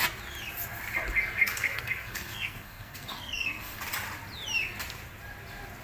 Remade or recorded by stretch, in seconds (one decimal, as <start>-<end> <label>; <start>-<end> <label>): 0.0-1.4 recorded; 1.4-3.8 remade; 3.8-5.8 recorded